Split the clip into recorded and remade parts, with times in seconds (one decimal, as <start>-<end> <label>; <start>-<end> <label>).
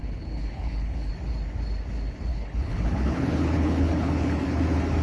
0.0-1.1 remade; 1.1-2.3 recorded; 2.3-4.6 remade; 4.6-5.0 recorded